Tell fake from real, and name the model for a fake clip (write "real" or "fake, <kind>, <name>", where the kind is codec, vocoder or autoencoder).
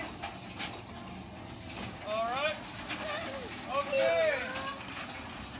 real